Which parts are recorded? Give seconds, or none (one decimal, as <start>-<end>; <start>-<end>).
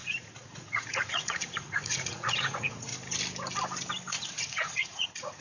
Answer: 2.9-4.1